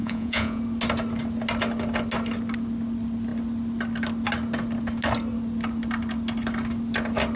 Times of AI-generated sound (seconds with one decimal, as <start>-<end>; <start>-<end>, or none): 0.0-0.6